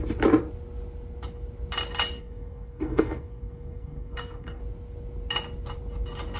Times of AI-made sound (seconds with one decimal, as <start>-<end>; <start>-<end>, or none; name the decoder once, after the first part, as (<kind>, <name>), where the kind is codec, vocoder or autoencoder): 2.2-4.6 (codec, SNAC)